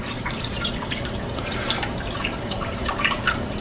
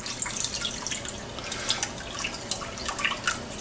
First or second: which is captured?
second